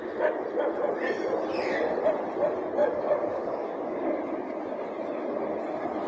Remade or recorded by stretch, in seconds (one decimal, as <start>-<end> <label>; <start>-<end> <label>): 0.0-2.8 recorded; 2.8-4.2 remade; 4.2-6.1 recorded

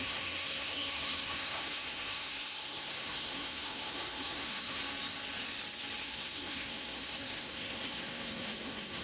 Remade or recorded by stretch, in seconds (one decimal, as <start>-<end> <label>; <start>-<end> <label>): 0.0-4.8 remade; 4.8-6.0 recorded; 6.0-9.0 remade

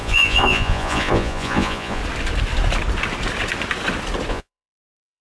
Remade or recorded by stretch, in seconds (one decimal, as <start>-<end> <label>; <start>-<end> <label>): 0.0-2.0 remade; 2.0-4.3 recorded; 4.3-5.2 remade